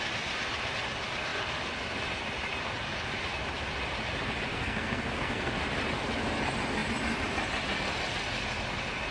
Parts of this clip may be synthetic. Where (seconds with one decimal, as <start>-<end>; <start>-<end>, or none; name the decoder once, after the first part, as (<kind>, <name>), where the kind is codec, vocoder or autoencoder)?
4.5-5.5 (codec, SNAC)